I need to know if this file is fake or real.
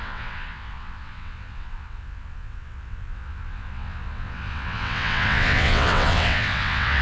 fake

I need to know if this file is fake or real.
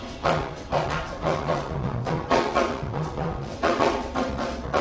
fake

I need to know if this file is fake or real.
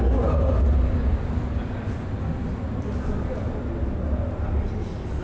real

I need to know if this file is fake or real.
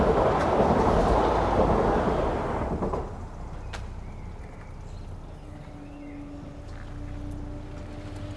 real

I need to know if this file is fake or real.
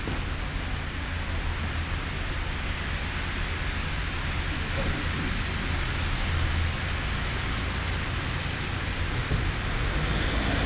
real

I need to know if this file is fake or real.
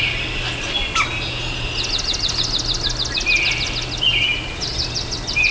real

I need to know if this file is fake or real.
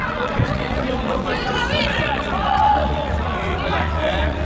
fake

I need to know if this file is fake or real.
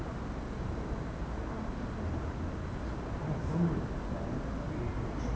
real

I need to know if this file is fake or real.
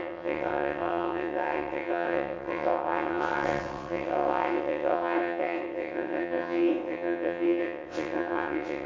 fake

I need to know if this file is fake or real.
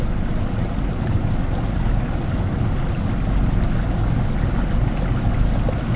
real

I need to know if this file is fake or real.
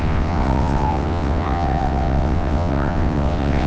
fake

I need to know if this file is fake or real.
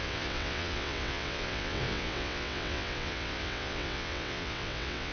fake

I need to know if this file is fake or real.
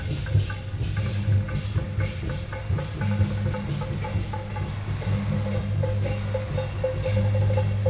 real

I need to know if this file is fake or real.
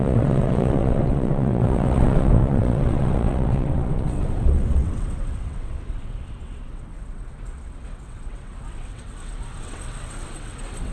fake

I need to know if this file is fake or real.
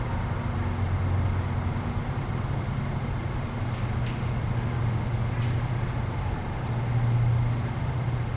real